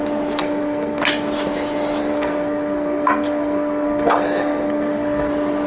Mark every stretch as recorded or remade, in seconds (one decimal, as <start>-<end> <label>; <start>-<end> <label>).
0.0-0.4 recorded; 0.4-1.0 remade; 1.0-2.0 recorded; 2.0-5.3 remade; 5.3-5.7 recorded